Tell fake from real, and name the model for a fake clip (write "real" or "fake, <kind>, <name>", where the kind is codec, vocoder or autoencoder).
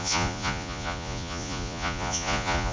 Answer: fake, vocoder, Vocos